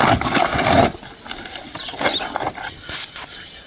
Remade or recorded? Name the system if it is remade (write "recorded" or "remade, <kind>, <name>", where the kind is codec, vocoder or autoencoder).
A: recorded